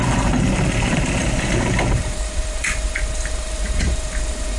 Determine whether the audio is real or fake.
fake